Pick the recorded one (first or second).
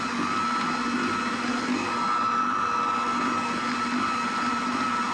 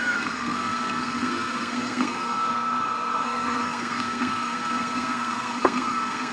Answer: first